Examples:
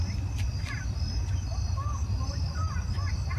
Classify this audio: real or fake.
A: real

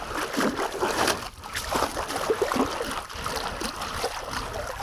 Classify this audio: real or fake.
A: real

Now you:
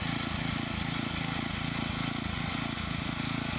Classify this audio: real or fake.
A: real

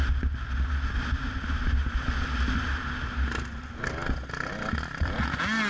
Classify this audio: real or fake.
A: real